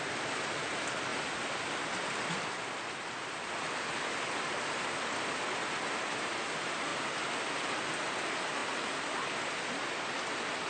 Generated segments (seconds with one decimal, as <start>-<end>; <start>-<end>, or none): none